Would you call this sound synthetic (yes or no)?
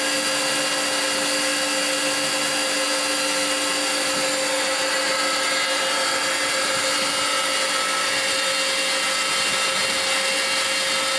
no